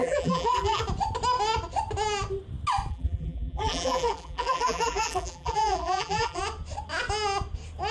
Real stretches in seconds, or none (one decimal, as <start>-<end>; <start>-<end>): 0.8-2.9; 6.4-7.9